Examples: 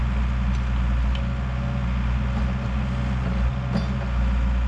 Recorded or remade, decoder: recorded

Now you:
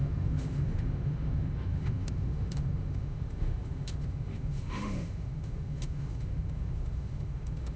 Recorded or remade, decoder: remade, autoencoder, DAC-VAE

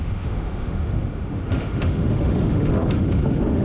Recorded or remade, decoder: remade, autoencoder, DAC-VAE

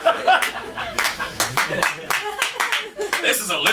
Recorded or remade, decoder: remade, autoencoder, DAC-VAE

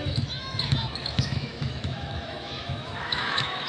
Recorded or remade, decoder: remade, autoencoder, DAC-VAE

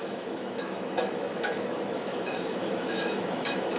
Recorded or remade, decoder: remade, autoencoder, DAC-VAE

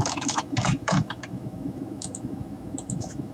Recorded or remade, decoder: remade, autoencoder, DAC-VAE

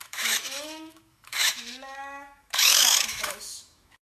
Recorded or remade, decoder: remade, autoencoder, DAC-VAE